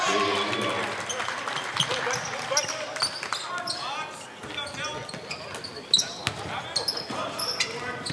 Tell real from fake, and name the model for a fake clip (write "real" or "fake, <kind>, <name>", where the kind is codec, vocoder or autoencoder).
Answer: real